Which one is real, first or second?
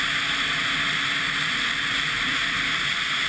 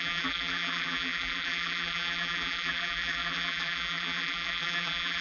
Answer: first